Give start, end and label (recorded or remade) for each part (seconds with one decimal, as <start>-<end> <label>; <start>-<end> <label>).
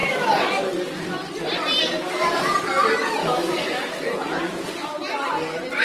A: 0.0-3.2 recorded; 3.2-4.1 remade; 4.1-5.8 recorded